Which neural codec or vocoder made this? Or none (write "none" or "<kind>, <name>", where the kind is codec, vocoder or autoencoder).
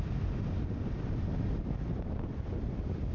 none